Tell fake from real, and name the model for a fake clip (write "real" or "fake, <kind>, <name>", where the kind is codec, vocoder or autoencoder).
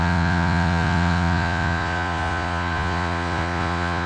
fake, vocoder, Vocos